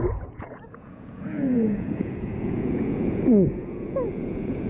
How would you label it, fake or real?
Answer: fake